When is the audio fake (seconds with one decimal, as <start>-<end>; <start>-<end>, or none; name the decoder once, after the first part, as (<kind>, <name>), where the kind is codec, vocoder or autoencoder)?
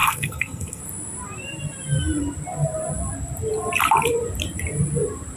0.0-0.8 (codec, SNAC)